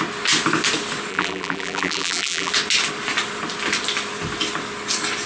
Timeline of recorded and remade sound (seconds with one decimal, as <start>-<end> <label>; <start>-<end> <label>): 0.0-1.1 recorded; 1.1-2.5 remade; 2.5-5.3 recorded